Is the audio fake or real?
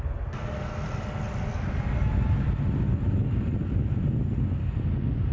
real